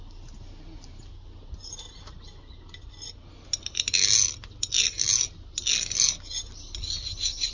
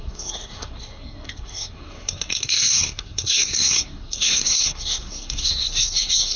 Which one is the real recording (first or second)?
first